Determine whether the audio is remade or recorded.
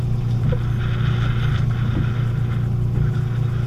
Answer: recorded